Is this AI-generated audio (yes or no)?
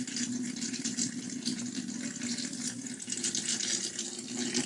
no